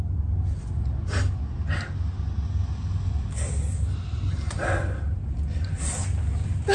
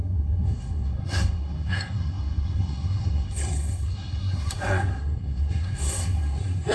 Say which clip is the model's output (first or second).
second